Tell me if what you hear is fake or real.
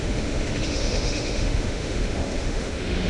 fake